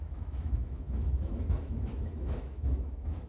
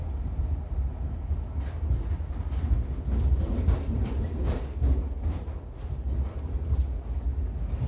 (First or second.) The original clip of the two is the second